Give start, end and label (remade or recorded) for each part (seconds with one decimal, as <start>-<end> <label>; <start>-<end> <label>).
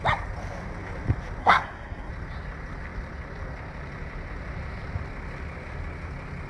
0.0-1.4 recorded; 1.4-2.1 remade; 2.1-6.5 recorded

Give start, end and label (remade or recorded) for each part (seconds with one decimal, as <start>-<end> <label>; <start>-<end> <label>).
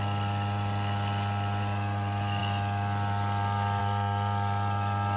0.0-5.2 recorded